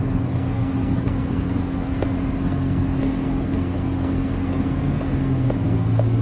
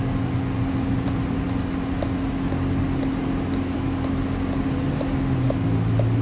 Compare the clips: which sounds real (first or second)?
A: second